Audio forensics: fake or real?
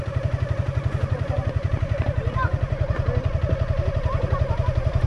fake